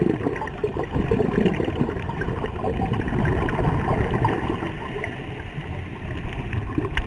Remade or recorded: recorded